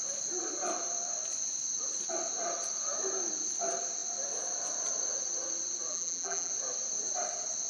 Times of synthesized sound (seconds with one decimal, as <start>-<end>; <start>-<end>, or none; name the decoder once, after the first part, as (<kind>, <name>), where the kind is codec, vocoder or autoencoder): 5.9-6.5 (vocoder, BigVGAN v2)